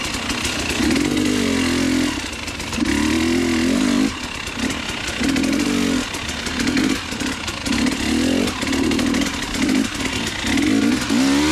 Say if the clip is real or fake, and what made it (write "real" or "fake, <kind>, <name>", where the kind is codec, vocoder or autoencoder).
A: real